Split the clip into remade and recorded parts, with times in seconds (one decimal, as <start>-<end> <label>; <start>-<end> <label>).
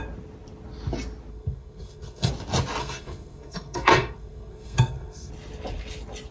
0.0-1.3 recorded; 1.3-2.3 remade; 2.3-2.8 recorded; 2.8-5.3 remade; 5.3-6.3 recorded